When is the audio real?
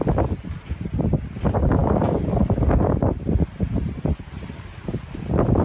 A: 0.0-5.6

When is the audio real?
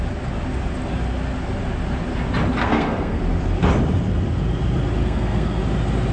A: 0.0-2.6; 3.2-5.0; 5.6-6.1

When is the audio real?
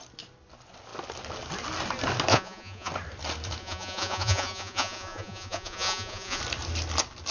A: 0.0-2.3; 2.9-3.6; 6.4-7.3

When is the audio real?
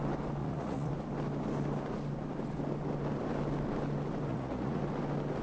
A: 0.0-0.4; 0.9-4.3; 4.8-5.4